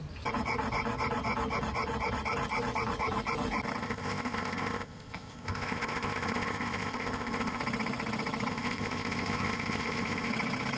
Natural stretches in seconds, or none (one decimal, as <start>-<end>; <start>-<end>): 0.0-3.8; 7.6-8.5; 10.3-10.8